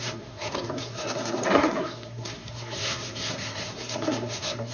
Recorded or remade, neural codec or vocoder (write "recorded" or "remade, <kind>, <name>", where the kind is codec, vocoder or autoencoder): remade, codec, SNAC